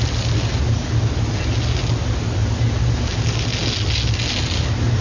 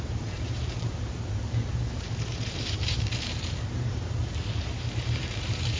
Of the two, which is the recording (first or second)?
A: first